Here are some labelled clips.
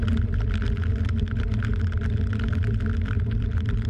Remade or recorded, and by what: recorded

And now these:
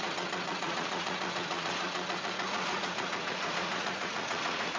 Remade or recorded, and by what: remade, vocoder, Vocos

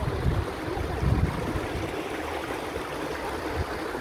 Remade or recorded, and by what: recorded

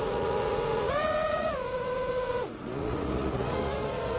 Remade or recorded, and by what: remade, vocoder, Vocos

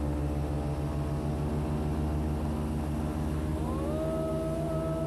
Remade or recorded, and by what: recorded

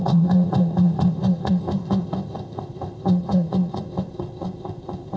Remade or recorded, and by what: remade, codec, ZipCodec